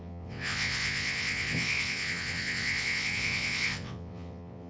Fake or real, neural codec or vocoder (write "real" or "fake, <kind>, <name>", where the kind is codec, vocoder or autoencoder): fake, vocoder, WaveNeXt